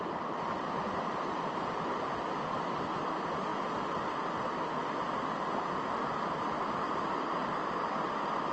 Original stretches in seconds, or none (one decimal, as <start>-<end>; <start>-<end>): 0.0-8.5